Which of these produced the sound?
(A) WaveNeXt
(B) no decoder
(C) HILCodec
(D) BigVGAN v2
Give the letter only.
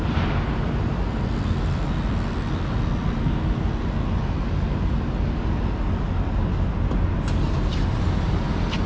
B